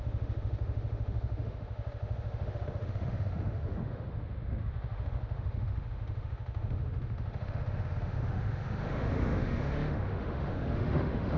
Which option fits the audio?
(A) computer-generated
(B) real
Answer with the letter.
A